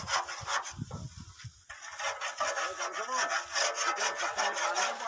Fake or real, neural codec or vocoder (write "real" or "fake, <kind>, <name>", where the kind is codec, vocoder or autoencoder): real